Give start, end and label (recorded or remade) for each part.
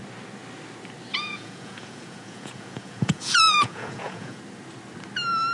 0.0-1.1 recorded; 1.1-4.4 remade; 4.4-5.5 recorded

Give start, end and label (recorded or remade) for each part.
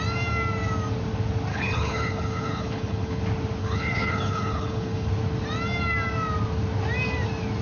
0.0-1.5 recorded; 1.5-3.2 remade; 3.2-3.6 recorded; 3.6-5.1 remade; 5.1-7.6 recorded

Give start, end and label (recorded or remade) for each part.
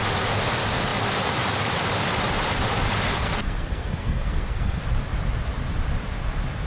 0.0-3.1 recorded; 3.1-4.8 remade; 4.8-6.7 recorded